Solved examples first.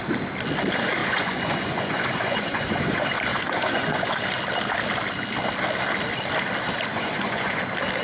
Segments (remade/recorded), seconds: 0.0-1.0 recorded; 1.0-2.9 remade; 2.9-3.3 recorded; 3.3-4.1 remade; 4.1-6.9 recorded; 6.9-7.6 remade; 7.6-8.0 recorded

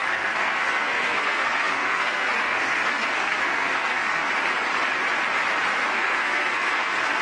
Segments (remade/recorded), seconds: 0.0-4.3 remade; 4.3-5.9 recorded; 5.9-7.2 remade

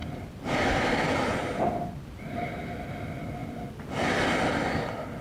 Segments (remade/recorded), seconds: 0.0-2.6 remade; 2.6-5.2 recorded

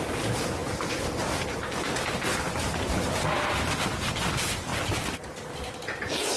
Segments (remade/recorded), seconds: 0.0-6.4 recorded

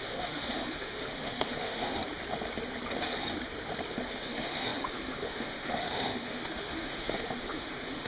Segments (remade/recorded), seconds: 0.0-2.0 remade; 2.0-4.1 recorded; 4.1-8.1 remade

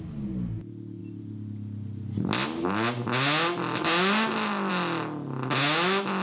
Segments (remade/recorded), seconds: 0.0-6.2 recorded

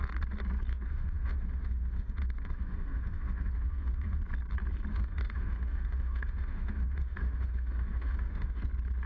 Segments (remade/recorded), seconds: 0.0-0.7 recorded; 0.7-4.2 remade; 4.2-4.9 recorded; 4.9-8.6 remade; 8.6-9.1 recorded